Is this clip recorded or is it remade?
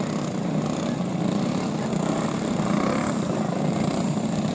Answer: recorded